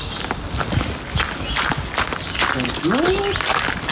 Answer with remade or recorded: recorded